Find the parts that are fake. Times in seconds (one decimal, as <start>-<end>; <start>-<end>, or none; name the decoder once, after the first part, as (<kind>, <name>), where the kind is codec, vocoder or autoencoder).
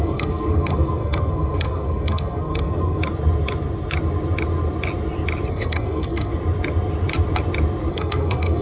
0.0-3.0 (codec, SNAC); 5.5-6.3; 7.9-8.6